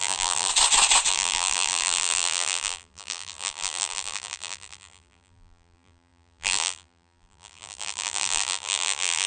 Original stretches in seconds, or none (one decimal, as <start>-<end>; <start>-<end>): 0.5-1.1